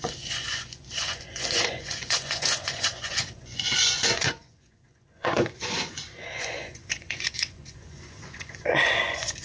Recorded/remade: remade